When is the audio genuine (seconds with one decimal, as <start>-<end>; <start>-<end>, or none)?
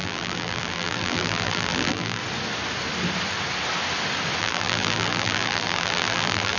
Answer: 2.2-4.4